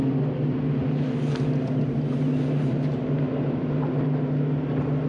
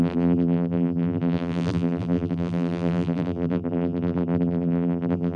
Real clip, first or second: first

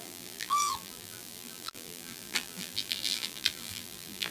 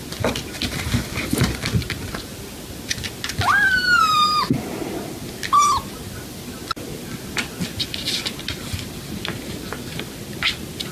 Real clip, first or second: second